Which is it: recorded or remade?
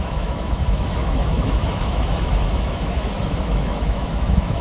remade